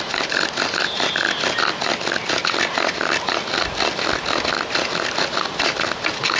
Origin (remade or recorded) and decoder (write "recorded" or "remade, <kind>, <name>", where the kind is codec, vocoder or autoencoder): recorded